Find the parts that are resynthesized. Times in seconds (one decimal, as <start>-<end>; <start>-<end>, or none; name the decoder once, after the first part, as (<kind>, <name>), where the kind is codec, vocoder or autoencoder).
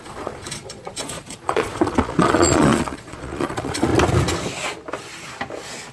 0.0-3.9 (vocoder, Vocos)